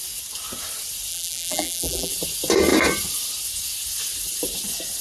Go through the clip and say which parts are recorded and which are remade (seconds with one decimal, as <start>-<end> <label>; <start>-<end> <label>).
0.0-1.1 recorded; 1.1-2.1 remade; 2.1-5.0 recorded